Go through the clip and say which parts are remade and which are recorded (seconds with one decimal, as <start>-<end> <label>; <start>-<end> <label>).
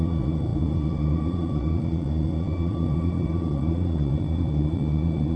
0.0-5.4 remade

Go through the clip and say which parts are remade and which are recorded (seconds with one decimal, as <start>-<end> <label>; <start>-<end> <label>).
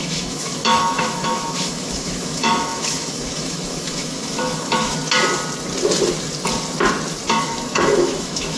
0.0-5.0 remade; 5.0-7.4 recorded; 7.4-8.6 remade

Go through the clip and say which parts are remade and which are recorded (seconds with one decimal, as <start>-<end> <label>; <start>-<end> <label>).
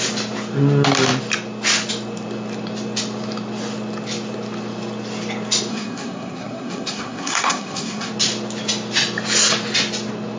0.0-5.7 recorded; 5.7-8.1 remade; 8.1-10.4 recorded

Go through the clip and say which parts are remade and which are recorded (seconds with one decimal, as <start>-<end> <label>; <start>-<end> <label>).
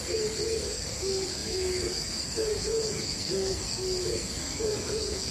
0.0-5.3 remade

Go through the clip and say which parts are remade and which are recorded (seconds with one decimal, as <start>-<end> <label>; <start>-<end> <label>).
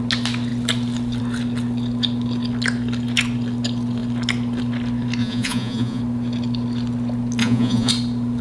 0.0-5.2 recorded; 5.2-6.0 remade; 6.0-7.4 recorded; 7.4-7.9 remade; 7.9-8.4 recorded